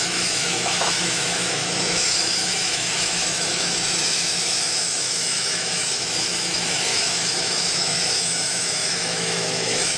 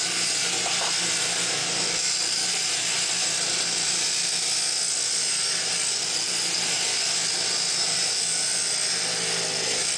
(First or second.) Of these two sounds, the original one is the second